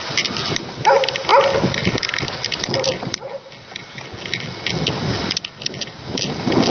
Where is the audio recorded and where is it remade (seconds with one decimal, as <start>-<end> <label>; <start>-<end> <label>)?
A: 0.0-6.7 recorded